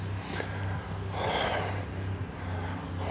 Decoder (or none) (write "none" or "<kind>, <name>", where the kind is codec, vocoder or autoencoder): none